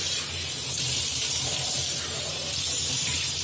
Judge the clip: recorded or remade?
remade